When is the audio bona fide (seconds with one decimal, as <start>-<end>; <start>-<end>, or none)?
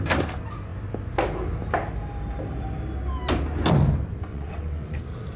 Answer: 0.0-4.3; 5.0-5.4